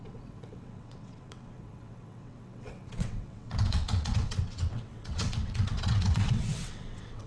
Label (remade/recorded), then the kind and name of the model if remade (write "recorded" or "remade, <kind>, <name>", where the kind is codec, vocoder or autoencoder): remade, vocoder, WaveNeXt